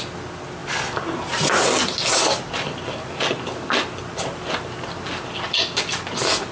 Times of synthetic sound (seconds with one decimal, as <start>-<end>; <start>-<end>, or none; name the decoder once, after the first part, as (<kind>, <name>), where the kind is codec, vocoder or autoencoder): none